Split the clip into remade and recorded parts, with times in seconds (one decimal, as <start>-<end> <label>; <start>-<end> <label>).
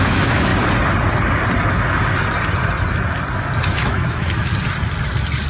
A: 0.0-0.5 remade; 0.5-3.7 recorded; 3.7-4.5 remade; 4.5-5.5 recorded